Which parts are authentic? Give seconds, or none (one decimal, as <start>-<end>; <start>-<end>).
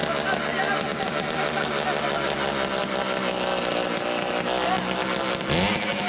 0.0-6.1